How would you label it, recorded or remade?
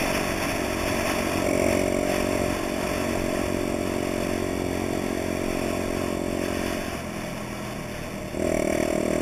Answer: recorded